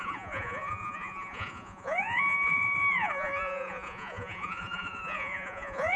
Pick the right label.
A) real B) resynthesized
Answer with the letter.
B